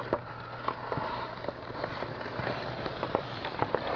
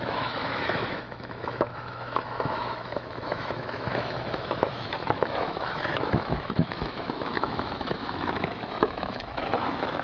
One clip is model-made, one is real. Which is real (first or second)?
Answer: first